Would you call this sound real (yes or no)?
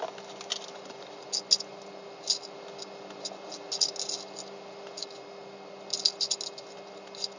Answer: yes